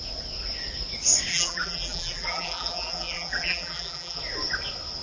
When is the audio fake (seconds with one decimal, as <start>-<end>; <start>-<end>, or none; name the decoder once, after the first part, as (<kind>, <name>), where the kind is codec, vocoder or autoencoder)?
1.3-4.2 (vocoder, BigVGAN v2)